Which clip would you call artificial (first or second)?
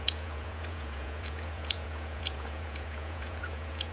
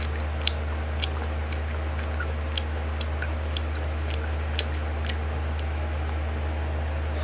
first